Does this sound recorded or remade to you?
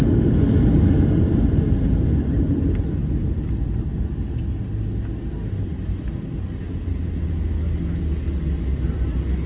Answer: recorded